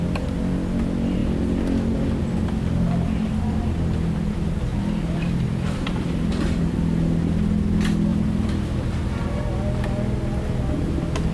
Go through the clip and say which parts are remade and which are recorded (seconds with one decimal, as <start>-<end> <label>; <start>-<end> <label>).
0.0-4.7 recorded; 4.7-6.6 remade; 6.6-8.1 recorded; 8.1-9.0 remade; 9.0-11.3 recorded